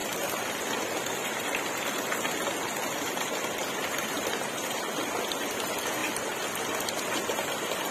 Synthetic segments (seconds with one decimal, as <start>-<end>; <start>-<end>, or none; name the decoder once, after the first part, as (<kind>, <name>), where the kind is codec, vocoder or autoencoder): none